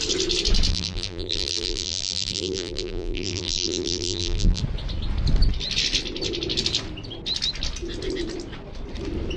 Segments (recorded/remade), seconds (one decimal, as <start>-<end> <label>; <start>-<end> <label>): 0.0-0.7 recorded; 0.7-4.6 remade; 4.6-9.4 recorded